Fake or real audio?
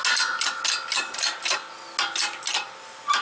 real